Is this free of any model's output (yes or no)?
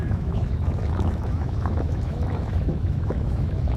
no